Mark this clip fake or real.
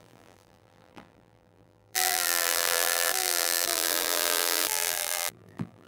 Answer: fake